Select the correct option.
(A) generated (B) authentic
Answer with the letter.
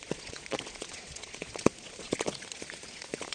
A